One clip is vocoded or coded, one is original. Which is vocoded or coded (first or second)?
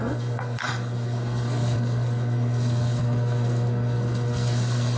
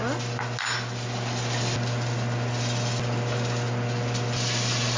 first